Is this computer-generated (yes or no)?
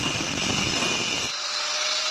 no